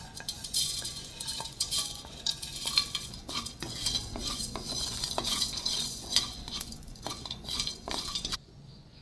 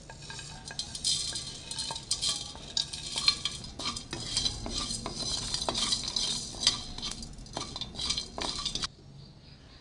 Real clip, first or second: second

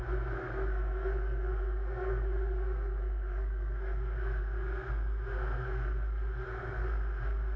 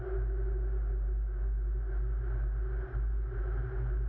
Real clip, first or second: second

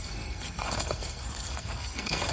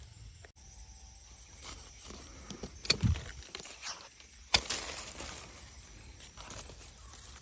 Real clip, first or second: second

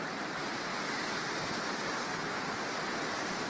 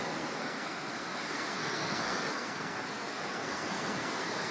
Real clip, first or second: first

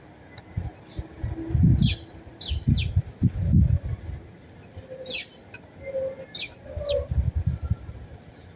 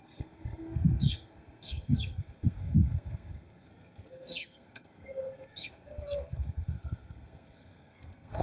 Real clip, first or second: first